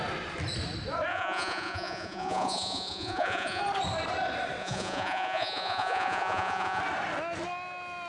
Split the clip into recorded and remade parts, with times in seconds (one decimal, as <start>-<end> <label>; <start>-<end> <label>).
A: 0.0-1.1 recorded; 1.1-3.6 remade; 3.6-4.6 recorded; 4.6-6.8 remade; 6.8-8.1 recorded